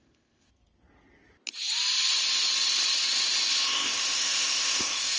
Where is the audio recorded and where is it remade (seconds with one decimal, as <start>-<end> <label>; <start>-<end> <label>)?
0.0-0.5 remade; 0.5-3.6 recorded; 3.6-5.2 remade